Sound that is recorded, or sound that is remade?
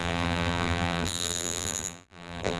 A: remade